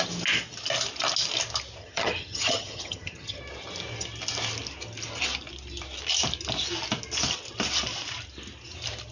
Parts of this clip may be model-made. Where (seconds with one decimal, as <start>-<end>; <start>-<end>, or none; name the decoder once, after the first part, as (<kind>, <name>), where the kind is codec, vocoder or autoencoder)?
1.8-3.4 (vocoder, HiFi-GAN)